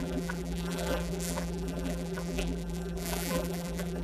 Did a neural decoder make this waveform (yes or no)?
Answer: yes